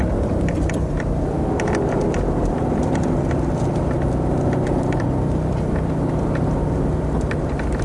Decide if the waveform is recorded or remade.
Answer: remade